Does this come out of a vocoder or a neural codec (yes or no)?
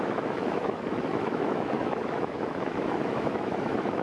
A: yes